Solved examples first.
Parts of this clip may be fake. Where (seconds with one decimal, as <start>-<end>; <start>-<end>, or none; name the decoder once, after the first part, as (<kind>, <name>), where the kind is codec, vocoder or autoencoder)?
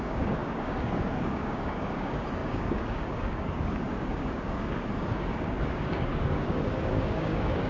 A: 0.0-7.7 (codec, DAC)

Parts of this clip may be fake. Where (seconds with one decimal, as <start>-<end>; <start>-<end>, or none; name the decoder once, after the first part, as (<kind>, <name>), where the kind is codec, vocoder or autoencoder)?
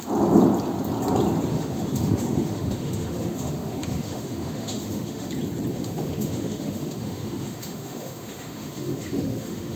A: 1.5-5.3 (autoencoder, DAC-VAE); 5.7-9.8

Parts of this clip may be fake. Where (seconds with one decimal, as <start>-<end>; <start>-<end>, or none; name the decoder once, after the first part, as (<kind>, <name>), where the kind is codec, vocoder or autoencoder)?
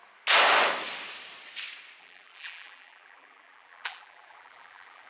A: 2.0-5.1 (vocoder, BigVGAN v2)